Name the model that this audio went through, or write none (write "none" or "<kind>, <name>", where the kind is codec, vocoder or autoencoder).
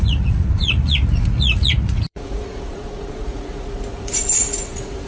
vocoder, Vocos